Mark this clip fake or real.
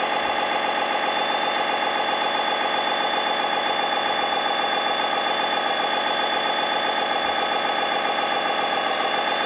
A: real